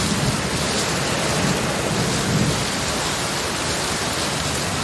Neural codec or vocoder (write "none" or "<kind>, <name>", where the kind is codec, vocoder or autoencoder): none